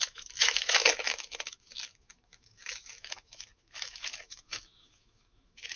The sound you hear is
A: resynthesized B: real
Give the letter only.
A